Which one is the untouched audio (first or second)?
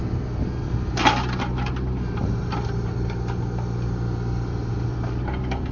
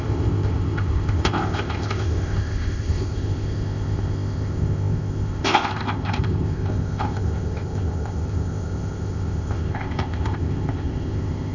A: first